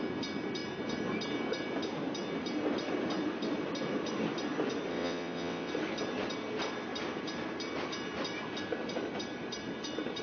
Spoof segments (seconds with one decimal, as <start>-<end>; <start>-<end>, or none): 4.9-5.7